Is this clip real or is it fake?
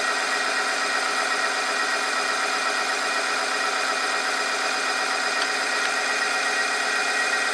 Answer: real